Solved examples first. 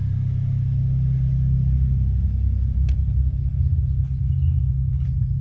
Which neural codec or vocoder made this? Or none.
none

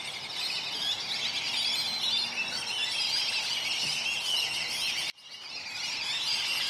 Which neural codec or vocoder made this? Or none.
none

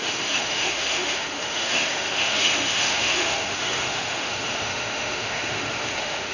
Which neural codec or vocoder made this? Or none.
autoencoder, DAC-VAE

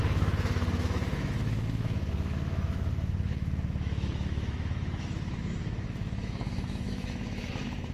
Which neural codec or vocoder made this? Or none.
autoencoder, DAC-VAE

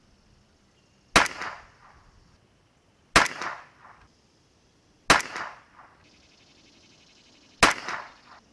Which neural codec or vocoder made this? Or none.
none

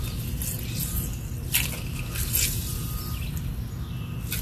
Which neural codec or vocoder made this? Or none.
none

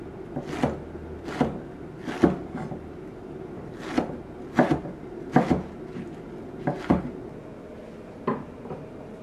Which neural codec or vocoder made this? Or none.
none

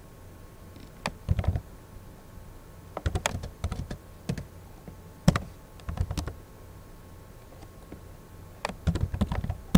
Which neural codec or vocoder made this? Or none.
none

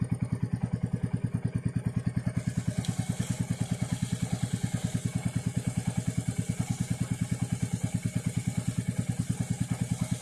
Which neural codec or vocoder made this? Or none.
none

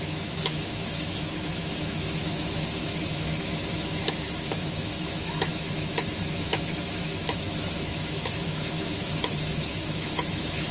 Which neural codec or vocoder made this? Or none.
autoencoder, DAC-VAE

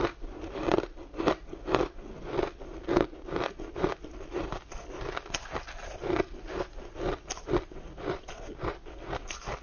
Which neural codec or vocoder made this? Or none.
none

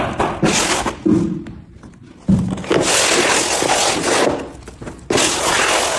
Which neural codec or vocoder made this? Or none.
none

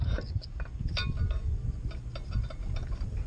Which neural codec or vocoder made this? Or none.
none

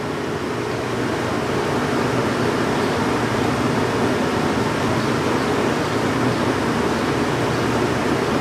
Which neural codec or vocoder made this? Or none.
none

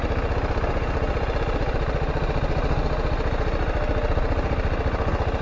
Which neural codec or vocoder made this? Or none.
none